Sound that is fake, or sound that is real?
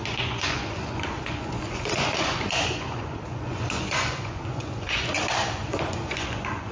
fake